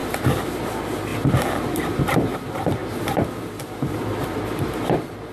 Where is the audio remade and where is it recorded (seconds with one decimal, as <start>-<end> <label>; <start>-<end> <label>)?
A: 0.0-5.3 recorded